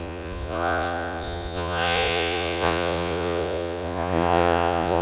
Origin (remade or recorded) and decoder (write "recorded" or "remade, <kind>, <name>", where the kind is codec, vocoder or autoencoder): remade, vocoder, Vocos